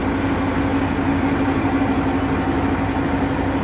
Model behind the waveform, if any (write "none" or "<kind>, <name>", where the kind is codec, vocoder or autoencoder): none